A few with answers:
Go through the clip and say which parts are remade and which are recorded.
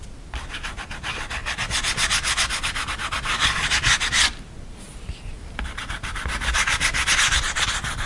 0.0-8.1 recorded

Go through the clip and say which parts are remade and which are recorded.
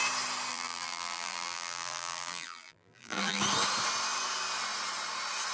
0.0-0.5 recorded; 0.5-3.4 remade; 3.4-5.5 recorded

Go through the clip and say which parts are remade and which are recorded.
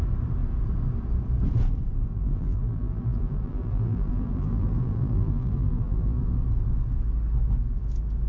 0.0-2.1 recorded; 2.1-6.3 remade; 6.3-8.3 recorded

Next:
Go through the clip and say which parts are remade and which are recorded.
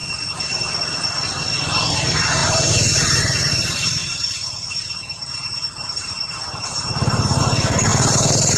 0.0-0.7 remade; 0.7-4.0 recorded; 4.0-7.4 remade; 7.4-7.9 recorded; 7.9-8.6 remade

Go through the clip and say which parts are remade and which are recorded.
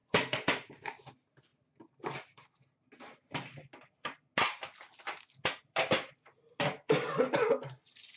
0.0-0.7 remade; 0.7-8.2 recorded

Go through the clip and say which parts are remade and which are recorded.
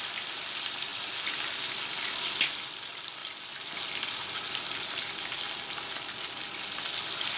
0.0-7.4 recorded